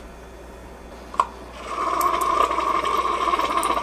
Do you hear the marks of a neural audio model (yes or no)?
no